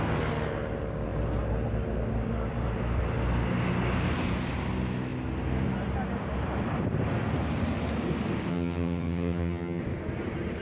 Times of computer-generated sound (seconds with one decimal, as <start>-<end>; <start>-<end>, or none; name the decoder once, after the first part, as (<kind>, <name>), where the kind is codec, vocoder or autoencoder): 8.5-9.8 (vocoder, HiFi-GAN)

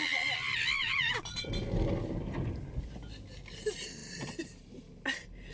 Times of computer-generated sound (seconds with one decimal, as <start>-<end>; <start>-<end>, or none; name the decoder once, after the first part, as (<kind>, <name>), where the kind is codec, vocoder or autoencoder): 0.8-1.5 (vocoder, Vocos)

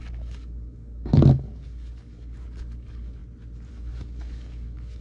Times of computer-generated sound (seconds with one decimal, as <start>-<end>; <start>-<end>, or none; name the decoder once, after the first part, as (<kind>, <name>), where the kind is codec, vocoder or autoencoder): 0.0-3.2 (codec, DAC); 3.7-5.0

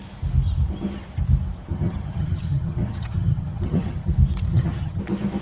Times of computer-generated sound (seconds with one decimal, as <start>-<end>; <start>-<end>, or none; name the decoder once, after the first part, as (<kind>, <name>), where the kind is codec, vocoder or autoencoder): 1.7-4.1 (vocoder, HiFi-GAN); 4.5-5.0

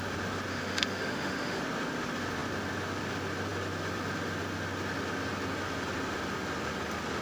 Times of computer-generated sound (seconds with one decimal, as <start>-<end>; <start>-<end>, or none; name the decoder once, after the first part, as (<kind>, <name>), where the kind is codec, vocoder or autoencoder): 0.5-1.6 (autoencoder, DAC-VAE)

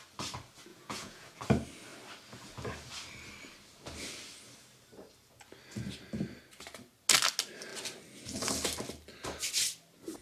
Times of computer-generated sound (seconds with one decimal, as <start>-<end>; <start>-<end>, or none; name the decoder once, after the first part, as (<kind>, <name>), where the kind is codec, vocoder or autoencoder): 0.7-1.4 (vocoder, Vocos)

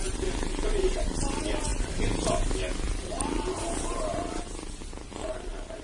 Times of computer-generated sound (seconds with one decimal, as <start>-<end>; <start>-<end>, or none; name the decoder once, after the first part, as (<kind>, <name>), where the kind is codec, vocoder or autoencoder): none

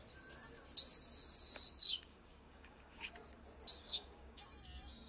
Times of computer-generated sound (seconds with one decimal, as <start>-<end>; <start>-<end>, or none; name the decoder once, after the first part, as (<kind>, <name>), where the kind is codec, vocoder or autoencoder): 1.8-3.0 (codec, DAC); 3.8-5.1